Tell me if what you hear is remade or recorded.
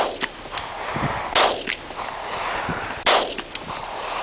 recorded